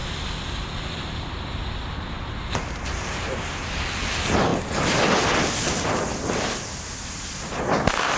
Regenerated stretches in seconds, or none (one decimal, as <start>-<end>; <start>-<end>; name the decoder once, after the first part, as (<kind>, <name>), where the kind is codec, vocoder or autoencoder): 0.0-0.8 (vocoder, BigVGAN v2)